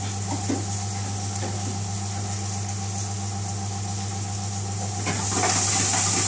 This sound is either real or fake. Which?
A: real